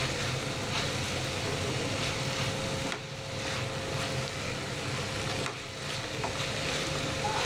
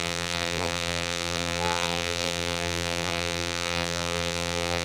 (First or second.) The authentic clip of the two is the first